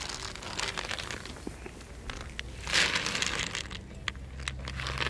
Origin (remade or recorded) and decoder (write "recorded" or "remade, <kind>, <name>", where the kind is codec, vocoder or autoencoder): recorded